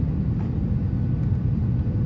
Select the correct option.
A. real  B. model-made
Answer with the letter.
A